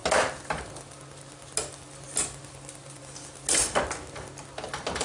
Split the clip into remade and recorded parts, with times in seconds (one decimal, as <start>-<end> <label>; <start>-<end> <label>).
0.0-5.0 recorded